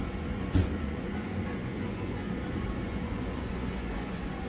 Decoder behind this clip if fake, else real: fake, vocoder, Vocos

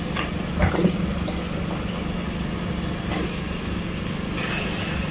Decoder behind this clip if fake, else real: real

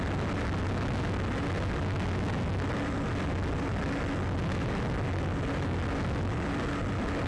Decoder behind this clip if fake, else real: real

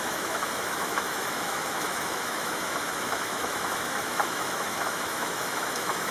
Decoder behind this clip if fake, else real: fake, autoencoder, DAC-VAE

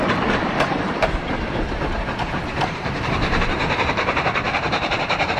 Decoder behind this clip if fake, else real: fake, vocoder, BigVGAN v2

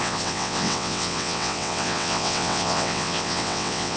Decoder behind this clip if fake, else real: fake, vocoder, WaveNeXt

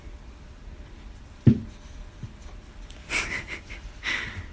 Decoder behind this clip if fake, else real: fake, vocoder, BigVGAN v2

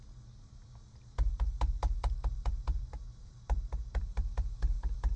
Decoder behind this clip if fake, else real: real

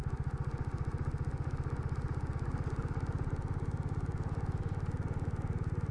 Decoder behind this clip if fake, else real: real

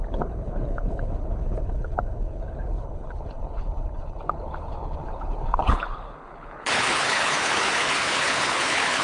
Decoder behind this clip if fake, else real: fake, codec, HILCodec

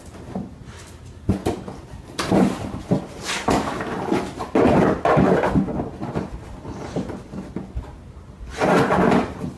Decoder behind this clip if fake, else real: real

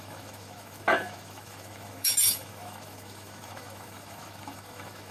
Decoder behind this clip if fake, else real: fake, autoencoder, DAC-VAE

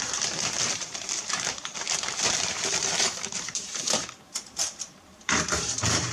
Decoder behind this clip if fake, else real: fake, vocoder, BigVGAN v2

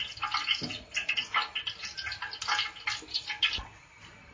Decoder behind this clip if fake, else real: real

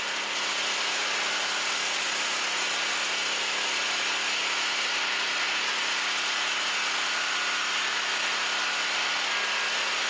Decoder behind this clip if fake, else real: real